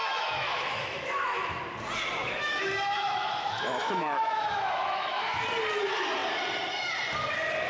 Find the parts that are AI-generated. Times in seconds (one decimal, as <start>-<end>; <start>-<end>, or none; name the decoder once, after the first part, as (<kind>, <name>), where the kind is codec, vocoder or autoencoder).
0.0-1.6 (autoencoder, DAC-VAE); 2.2-5.4